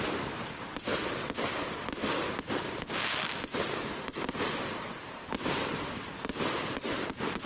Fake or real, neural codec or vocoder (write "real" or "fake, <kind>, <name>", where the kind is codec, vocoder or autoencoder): real